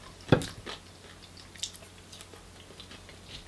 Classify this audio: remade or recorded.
recorded